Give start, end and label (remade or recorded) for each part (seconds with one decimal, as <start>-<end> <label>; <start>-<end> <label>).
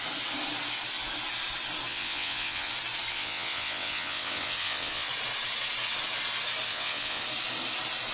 0.0-1.9 recorded; 1.9-2.7 remade; 2.7-3.1 recorded; 3.1-5.1 remade; 5.1-6.7 recorded; 6.7-7.2 remade; 7.2-8.1 recorded